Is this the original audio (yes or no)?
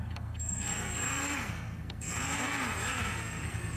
no